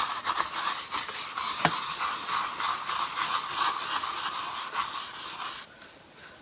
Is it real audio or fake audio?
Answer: real